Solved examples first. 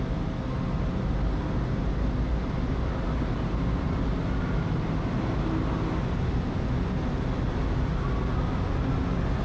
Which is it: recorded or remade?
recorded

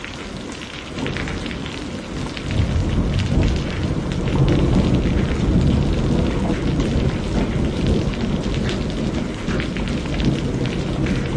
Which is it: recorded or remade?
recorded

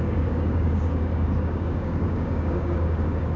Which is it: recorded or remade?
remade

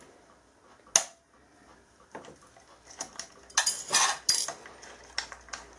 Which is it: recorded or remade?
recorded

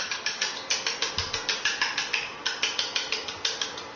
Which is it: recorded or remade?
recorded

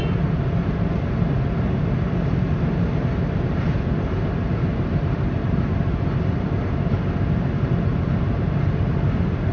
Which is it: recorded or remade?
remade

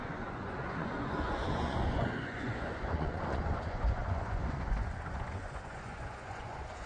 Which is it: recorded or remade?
remade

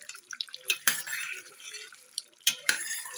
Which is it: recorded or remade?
remade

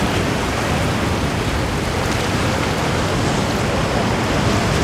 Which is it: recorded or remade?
recorded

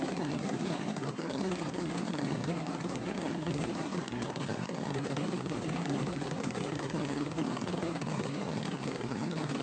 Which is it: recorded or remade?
remade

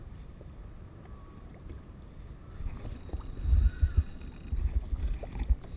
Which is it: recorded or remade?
recorded